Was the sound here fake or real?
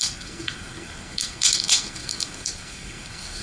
fake